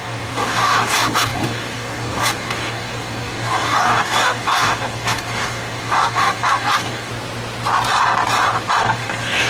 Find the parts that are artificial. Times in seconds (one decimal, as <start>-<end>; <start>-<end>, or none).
0.0-7.1; 8.8-9.5